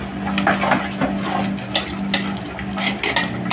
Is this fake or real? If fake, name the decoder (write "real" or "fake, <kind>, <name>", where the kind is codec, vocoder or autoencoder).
real